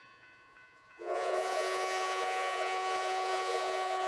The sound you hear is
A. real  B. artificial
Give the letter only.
B